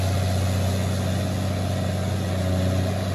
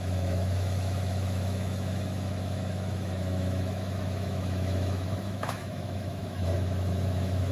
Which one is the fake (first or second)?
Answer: second